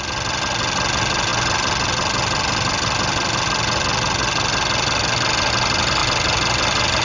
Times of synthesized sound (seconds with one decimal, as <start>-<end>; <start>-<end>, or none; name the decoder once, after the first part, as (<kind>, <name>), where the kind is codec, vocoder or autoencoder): none